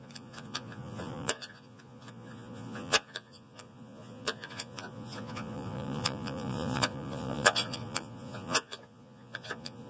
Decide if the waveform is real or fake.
fake